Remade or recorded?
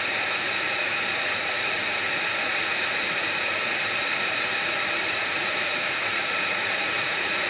remade